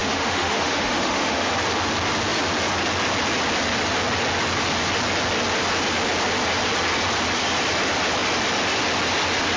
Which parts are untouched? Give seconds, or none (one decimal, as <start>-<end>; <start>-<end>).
1.5-9.6